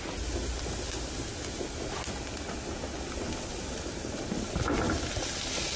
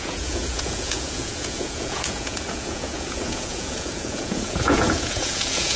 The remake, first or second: second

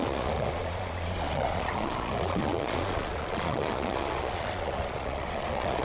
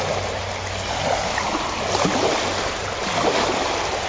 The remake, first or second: first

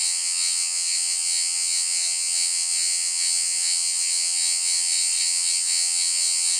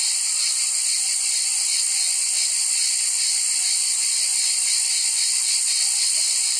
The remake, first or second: first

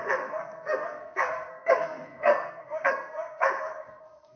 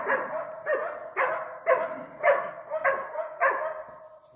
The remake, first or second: first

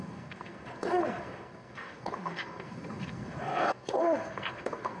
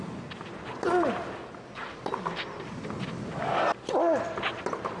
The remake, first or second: first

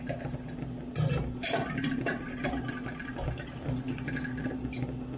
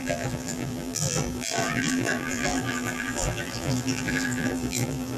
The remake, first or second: second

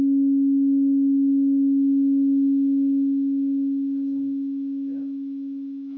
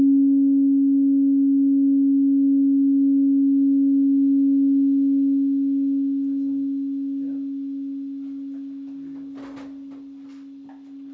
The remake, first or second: first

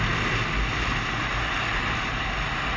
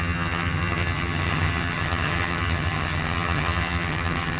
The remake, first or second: second